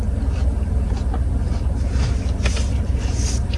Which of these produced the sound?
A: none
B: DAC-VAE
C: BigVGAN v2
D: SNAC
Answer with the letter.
A